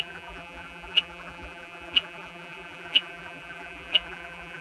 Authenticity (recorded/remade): remade